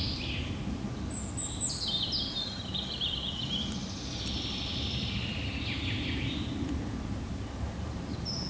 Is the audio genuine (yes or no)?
yes